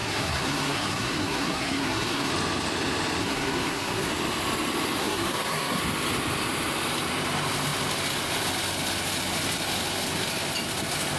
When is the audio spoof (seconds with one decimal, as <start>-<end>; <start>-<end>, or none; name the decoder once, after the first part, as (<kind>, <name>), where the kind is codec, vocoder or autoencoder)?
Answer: 0.0-2.3 (codec, SNAC); 3.2-4.1; 5.0-5.8